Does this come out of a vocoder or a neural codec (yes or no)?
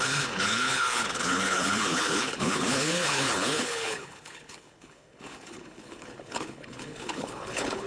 yes